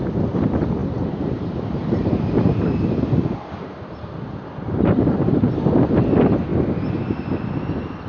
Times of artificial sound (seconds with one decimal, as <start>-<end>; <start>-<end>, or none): 0.8-5.7